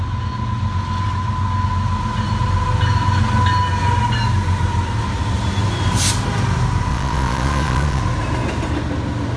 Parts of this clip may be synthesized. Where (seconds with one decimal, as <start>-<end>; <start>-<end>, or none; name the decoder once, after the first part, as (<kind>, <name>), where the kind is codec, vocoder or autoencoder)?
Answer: 6.9-8.0 (vocoder, Vocos)